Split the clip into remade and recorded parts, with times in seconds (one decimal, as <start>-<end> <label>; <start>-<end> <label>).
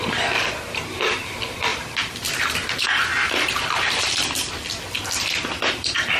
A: 0.0-6.2 remade